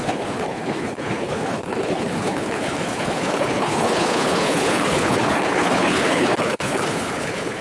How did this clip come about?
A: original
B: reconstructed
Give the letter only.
B